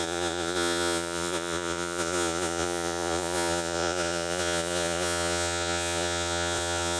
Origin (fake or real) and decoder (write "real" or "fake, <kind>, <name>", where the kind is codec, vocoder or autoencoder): fake, vocoder, Vocos